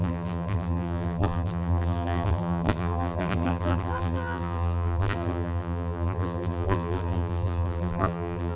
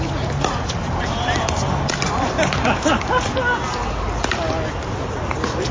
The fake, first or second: first